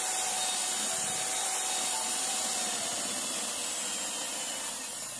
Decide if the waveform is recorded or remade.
recorded